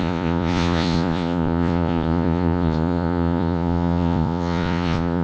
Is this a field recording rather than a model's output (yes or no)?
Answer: no